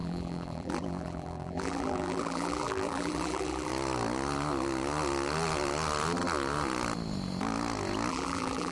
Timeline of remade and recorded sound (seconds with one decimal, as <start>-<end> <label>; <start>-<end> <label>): 0.0-3.7 remade; 3.7-8.1 recorded; 8.1-8.7 remade